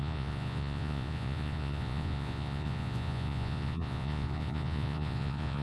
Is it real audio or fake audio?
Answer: fake